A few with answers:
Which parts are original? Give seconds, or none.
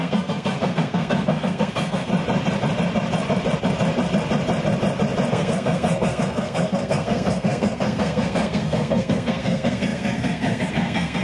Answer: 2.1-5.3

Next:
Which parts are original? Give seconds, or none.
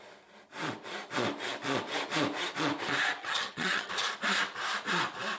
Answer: 0.0-3.2; 3.9-5.4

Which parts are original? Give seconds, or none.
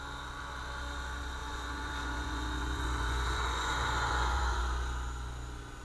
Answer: 0.0-1.4; 4.6-5.8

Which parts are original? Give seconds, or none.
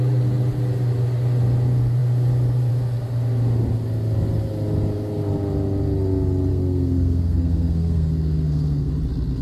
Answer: 0.0-6.5; 8.9-9.4